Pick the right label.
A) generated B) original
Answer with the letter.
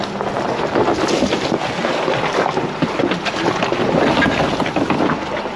B